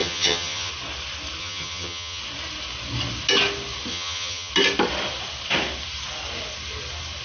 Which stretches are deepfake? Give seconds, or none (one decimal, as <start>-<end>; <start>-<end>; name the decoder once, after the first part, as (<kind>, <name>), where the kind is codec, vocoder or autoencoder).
0.0-0.7 (vocoder, HiFi-GAN); 1.4-2.2; 3.9-4.5